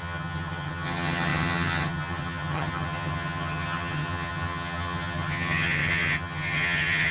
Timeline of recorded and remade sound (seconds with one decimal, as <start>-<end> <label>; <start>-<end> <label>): 0.0-7.1 remade